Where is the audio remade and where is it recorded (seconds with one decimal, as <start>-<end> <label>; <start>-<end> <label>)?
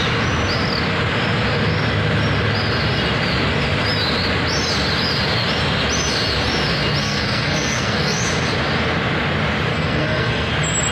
0.0-7.0 recorded; 7.0-8.2 remade; 8.2-9.7 recorded; 9.7-10.5 remade; 10.5-10.9 recorded